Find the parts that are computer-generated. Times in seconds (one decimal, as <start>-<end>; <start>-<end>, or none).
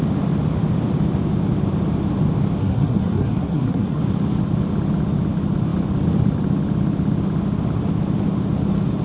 2.6-4.0